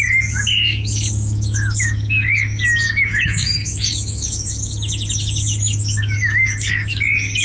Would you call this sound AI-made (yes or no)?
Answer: yes